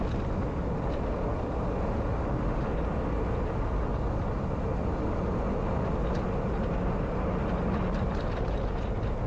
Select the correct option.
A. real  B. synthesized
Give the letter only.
A